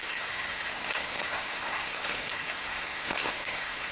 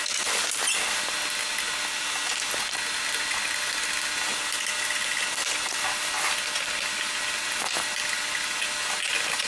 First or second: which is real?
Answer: second